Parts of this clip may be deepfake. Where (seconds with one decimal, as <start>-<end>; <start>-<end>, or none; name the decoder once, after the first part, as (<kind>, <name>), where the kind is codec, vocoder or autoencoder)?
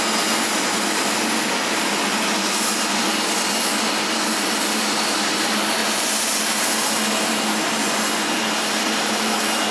5.8-6.4 (vocoder, Vocos); 7.8-8.4